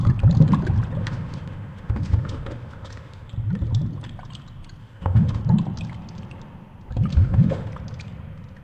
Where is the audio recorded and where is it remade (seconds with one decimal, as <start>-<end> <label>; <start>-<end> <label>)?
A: 0.0-1.0 recorded; 1.0-3.3 remade; 3.3-4.8 recorded; 4.8-5.4 remade; 5.4-7.1 recorded; 7.1-7.7 remade; 7.7-8.6 recorded

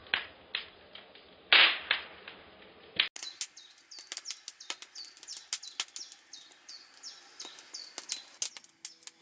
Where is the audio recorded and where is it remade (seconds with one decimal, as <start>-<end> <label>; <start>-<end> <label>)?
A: 0.0-9.2 recorded

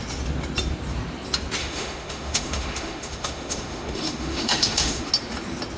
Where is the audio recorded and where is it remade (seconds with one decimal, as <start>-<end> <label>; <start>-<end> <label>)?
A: 0.0-1.6 recorded; 1.6-5.1 remade; 5.1-5.8 recorded

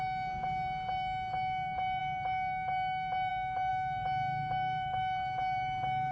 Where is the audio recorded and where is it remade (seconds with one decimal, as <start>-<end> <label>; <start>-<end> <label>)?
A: 0.0-6.1 recorded

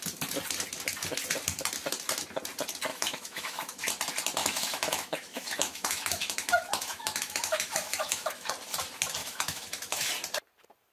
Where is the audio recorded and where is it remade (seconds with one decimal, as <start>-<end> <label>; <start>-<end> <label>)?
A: 0.0-2.9 recorded; 2.9-3.9 remade; 3.9-4.4 recorded; 4.4-8.5 remade; 8.5-9.2 recorded; 9.2-10.1 remade; 10.1-10.9 recorded

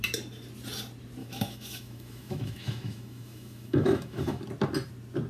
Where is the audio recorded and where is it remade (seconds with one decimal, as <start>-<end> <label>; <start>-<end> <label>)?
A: 0.0-1.2 recorded; 1.2-4.4 remade; 4.4-5.3 recorded